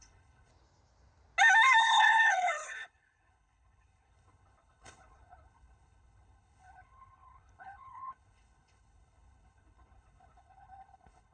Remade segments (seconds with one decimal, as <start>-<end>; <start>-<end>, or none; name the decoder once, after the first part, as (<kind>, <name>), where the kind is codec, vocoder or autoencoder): 0.0-0.5 (codec, HILCodec); 1.8-11.3